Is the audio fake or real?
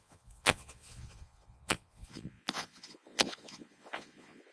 fake